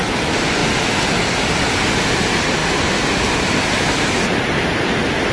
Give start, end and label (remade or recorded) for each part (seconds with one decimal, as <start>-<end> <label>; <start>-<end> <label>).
0.0-5.3 recorded